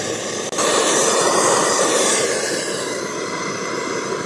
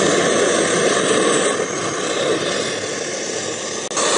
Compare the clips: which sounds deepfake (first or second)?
first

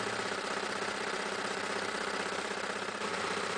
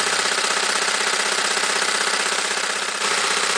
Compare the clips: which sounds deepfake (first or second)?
first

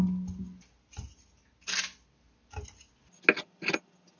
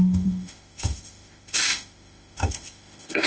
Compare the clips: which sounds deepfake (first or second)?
second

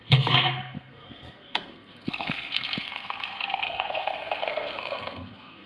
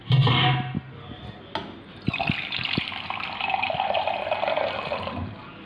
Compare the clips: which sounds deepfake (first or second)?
first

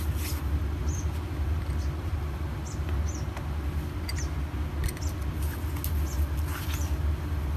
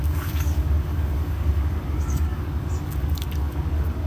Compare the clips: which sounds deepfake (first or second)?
second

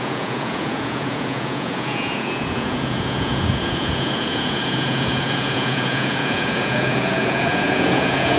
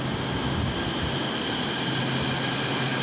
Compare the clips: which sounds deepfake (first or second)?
first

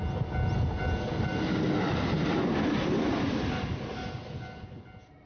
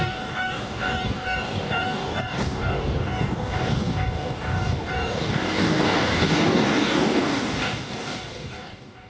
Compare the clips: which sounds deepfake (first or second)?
second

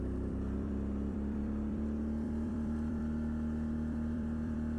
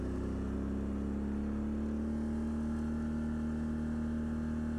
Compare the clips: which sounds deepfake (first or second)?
first